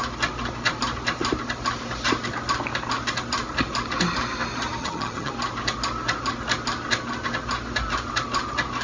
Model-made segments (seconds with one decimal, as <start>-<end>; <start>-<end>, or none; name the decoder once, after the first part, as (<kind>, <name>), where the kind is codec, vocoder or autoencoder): 4.8-5.3 (vocoder, HiFi-GAN)

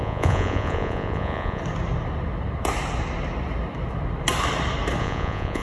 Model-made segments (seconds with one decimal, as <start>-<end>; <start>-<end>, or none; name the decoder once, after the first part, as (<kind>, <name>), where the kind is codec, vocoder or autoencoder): 0.0-1.6 (vocoder, Vocos); 5.0-5.6

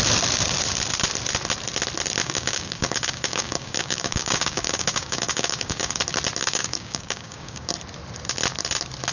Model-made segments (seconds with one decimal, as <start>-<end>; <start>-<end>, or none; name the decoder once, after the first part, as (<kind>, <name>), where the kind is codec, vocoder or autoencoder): 2.2-6.0 (codec, DAC); 6.4-7.7

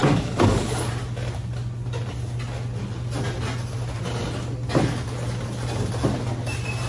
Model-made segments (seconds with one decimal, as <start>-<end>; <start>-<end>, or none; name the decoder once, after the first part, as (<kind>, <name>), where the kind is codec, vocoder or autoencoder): 0.0-0.9 (codec, DAC)

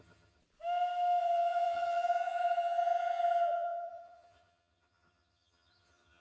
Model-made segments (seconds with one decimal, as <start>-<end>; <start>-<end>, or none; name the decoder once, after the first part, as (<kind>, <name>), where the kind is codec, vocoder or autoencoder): 0.0-0.4 (vocoder, HiFi-GAN); 1.2-6.2

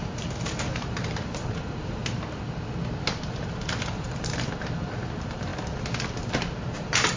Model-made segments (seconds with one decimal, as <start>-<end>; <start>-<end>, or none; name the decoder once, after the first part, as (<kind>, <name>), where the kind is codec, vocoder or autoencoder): 0.0-2.0 (vocoder, BigVGAN v2); 3.0-5.5; 6.6-7.2